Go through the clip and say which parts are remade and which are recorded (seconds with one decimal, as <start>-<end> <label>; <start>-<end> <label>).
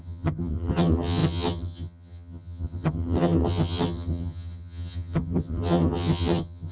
0.0-6.7 remade